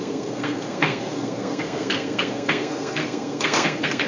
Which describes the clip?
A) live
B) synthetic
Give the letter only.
B